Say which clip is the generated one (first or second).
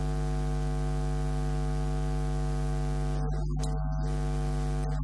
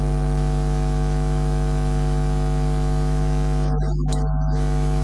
second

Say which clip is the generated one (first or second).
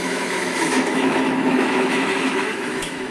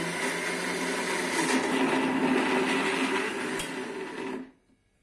first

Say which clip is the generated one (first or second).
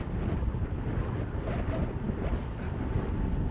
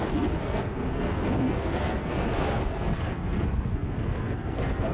second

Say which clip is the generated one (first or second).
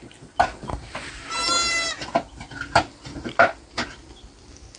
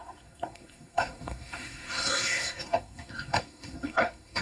second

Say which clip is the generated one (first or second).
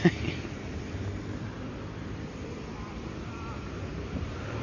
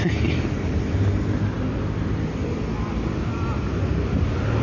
first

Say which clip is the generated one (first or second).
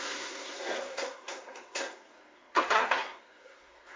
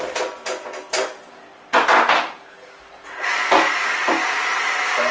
first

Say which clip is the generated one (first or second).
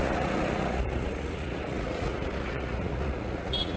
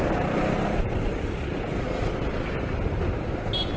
first